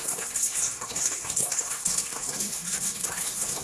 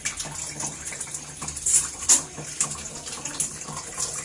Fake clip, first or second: first